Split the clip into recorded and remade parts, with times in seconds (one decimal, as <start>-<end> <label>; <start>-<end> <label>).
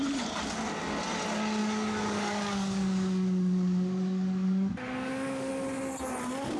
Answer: 0.0-1.6 recorded; 1.6-5.5 remade; 5.5-6.6 recorded